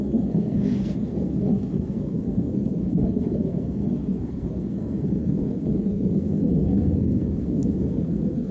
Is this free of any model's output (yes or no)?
no